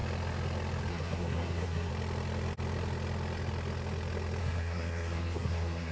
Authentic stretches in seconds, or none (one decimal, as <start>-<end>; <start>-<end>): 0.0-0.9; 1.9-4.4